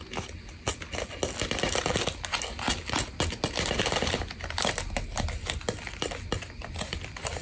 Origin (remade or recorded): recorded